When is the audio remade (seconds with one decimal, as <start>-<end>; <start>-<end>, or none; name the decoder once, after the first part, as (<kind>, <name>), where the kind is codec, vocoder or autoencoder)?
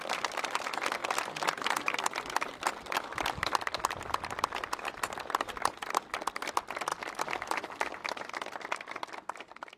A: none